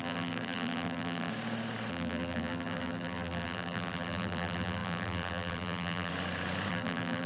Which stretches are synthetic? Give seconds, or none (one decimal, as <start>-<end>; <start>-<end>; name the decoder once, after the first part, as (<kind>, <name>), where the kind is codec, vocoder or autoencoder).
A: 0.0-1.3 (vocoder, BigVGAN v2); 1.9-6.1; 6.7-7.3